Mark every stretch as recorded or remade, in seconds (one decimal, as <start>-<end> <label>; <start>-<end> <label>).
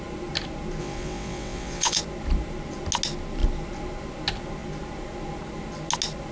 0.0-0.8 recorded; 0.8-2.0 remade; 2.0-6.3 recorded